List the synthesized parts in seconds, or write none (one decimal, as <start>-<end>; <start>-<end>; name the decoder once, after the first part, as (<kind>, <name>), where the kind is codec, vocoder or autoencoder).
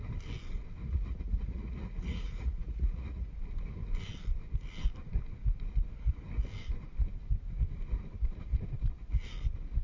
0.8-3.3 (vocoder, Vocos)